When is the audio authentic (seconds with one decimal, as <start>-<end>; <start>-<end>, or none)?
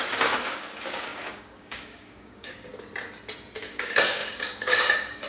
2.7-3.6